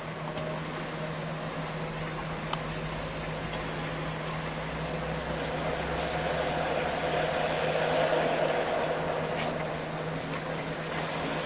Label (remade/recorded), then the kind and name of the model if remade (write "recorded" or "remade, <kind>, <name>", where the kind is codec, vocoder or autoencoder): recorded